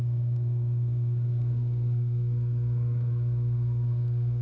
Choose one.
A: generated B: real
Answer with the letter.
A